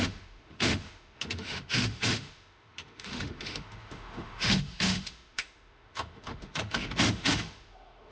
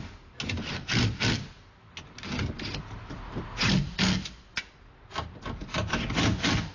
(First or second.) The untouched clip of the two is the second